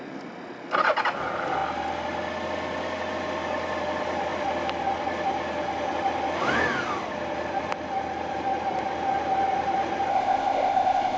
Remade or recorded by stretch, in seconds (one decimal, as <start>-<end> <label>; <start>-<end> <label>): 0.0-10.1 recorded; 10.1-11.2 remade